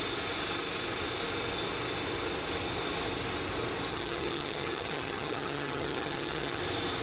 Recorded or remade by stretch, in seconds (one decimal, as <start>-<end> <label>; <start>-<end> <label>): 0.0-3.9 recorded; 3.9-6.6 remade; 6.6-7.0 recorded

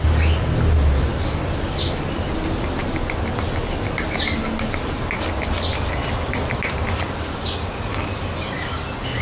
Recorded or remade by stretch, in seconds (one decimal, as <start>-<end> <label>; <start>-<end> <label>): 0.0-9.2 recorded

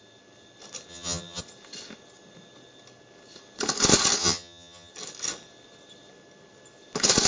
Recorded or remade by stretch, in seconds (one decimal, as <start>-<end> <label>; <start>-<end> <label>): 0.0-0.9 recorded; 0.9-1.4 remade; 1.4-4.2 recorded; 4.2-4.9 remade; 4.9-7.3 recorded

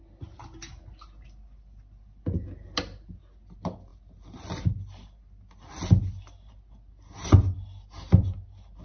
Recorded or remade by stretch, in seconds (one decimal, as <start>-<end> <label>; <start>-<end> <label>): 0.0-8.8 recorded

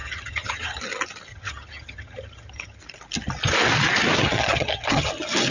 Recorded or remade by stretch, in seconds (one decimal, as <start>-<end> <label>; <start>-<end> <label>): 0.0-0.8 remade; 0.8-1.3 recorded; 1.3-2.8 remade; 2.8-4.2 recorded; 4.2-5.1 remade; 5.1-5.5 recorded